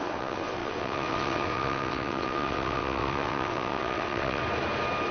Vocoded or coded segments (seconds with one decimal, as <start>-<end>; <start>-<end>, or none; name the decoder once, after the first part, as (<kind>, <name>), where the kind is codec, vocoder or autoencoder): 0.0-4.4 (vocoder, WaveNeXt)